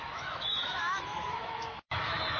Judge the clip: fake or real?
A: fake